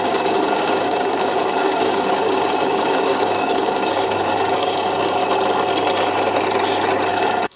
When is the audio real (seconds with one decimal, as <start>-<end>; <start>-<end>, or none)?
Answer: 5.2-7.1